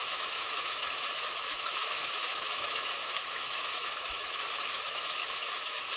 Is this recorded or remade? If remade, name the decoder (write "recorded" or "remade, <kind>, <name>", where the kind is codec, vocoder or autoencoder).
remade, autoencoder, DAC-VAE